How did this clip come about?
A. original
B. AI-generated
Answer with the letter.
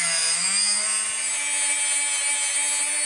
A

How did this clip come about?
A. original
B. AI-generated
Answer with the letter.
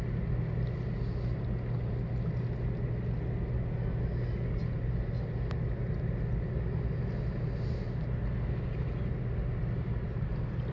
A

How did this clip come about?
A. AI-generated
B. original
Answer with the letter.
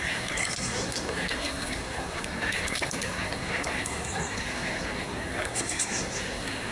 A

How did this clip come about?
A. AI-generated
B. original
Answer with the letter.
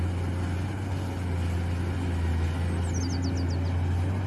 B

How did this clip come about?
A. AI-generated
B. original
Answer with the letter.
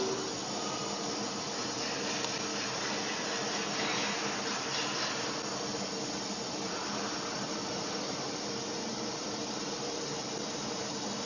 B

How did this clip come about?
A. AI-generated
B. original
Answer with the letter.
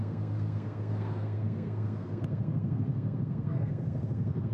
A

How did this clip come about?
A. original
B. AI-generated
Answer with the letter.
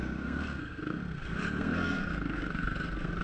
B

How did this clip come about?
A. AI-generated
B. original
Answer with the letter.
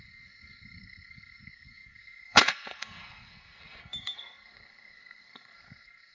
A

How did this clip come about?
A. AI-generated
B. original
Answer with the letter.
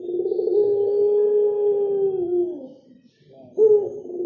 B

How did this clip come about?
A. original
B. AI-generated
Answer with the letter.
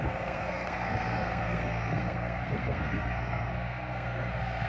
B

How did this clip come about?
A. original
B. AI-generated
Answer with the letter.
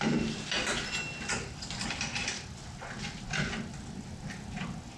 A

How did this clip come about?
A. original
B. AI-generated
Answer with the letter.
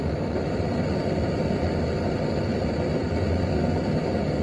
A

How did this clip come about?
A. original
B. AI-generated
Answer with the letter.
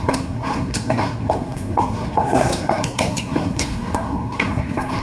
B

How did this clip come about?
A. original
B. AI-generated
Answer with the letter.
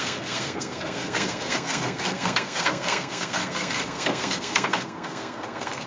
B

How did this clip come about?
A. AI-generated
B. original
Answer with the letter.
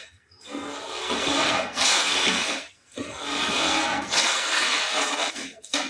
A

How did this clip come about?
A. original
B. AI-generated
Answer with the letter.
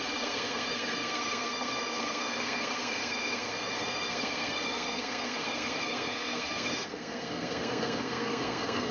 B